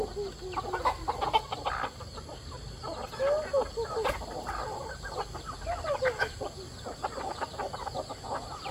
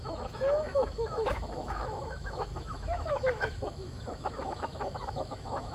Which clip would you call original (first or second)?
first